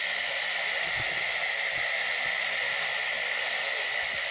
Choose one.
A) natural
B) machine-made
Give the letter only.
A